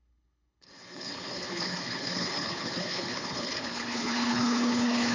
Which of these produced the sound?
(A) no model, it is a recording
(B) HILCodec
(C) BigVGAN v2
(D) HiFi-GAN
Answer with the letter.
B